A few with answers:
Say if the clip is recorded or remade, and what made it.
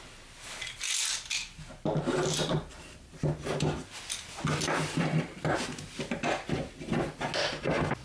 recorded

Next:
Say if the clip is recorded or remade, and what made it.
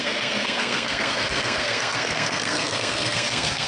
remade, codec, SNAC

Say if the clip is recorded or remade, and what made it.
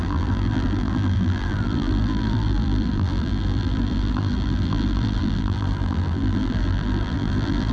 remade, vocoder, BigVGAN v2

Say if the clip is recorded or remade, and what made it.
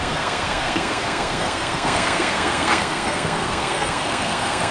remade, codec, SNAC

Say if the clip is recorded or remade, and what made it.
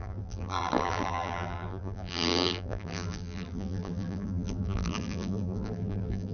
remade, vocoder, BigVGAN v2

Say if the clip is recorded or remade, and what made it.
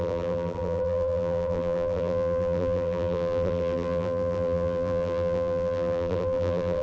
remade, vocoder, BigVGAN v2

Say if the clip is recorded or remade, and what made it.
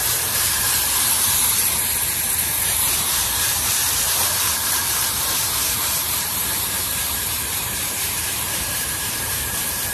remade, vocoder, BigVGAN v2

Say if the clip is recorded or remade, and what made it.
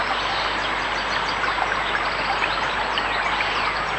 recorded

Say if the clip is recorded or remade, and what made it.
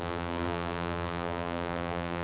remade, vocoder, BigVGAN v2